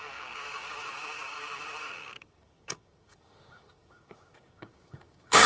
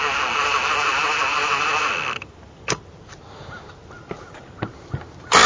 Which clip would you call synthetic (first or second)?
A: first